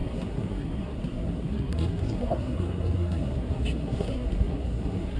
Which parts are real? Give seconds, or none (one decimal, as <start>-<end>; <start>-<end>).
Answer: none